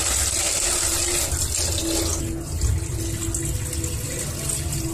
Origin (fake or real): real